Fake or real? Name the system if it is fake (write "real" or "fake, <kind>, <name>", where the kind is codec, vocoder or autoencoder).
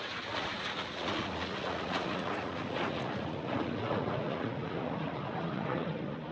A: fake, vocoder, Vocos